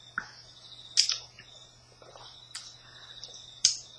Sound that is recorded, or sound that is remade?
recorded